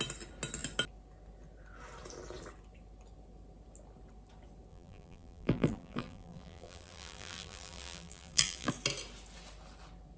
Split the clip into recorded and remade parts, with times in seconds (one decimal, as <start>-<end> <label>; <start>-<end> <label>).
0.0-4.7 recorded; 4.7-8.7 remade; 8.7-10.2 recorded